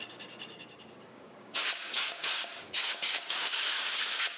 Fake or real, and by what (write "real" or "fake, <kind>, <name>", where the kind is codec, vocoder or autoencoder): fake, codec, DAC